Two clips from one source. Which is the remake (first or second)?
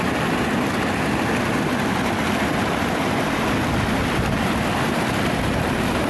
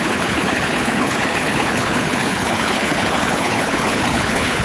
second